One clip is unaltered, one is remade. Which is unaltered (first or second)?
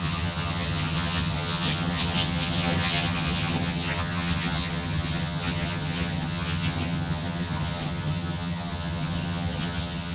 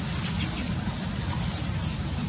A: second